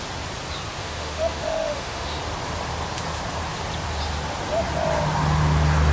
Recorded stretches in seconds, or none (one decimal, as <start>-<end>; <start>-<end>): 0.0-0.8; 2.2-5.9